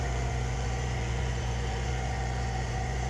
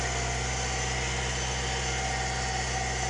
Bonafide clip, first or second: second